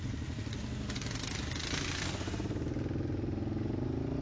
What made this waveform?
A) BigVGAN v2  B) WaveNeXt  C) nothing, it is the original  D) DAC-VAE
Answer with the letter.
C